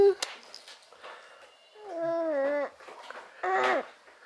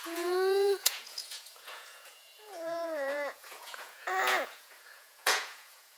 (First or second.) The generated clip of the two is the second